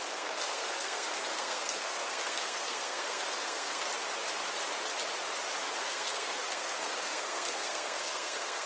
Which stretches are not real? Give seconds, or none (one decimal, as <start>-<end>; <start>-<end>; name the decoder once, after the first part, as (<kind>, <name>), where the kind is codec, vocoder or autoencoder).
0.0-3.9 (codec, SNAC); 5.8-8.7